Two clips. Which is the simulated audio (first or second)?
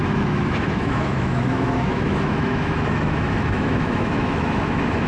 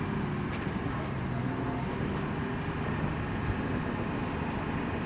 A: first